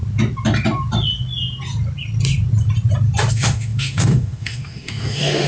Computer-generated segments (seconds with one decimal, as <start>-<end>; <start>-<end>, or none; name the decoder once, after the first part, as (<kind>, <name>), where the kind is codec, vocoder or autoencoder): 3.3-5.5 (autoencoder, DAC-VAE)